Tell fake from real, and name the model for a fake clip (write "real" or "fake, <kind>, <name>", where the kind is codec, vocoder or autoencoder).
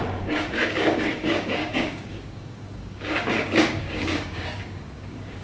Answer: fake, codec, DAC